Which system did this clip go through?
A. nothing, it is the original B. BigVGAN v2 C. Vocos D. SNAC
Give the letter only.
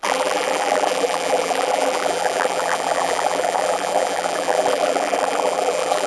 B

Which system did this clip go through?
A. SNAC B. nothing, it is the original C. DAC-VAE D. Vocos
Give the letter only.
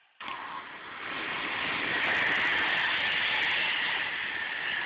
B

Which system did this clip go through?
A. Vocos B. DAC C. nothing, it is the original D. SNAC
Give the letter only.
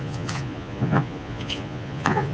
A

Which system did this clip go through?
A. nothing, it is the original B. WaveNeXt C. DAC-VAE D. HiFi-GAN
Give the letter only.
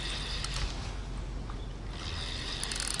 A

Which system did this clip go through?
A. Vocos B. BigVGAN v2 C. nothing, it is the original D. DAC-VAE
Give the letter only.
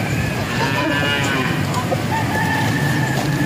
C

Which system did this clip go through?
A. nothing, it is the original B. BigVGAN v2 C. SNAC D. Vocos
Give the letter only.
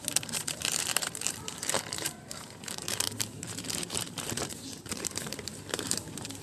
B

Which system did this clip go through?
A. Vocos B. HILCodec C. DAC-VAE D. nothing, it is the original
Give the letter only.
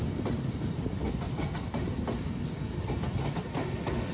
D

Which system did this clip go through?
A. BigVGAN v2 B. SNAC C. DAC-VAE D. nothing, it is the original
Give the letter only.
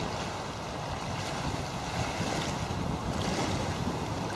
D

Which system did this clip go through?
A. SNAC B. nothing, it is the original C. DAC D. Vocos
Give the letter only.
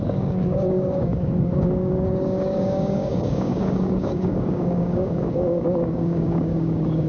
C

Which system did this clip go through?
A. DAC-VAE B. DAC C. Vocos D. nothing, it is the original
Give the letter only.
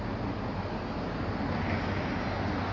D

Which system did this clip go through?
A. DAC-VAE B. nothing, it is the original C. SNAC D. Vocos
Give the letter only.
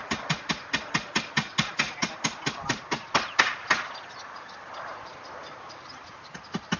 B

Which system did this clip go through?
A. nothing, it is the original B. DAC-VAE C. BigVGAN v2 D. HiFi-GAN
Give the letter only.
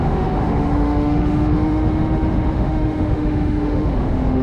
B